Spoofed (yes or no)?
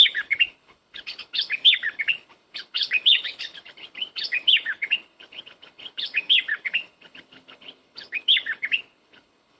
yes